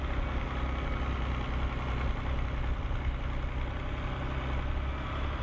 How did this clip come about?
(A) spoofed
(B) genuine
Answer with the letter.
B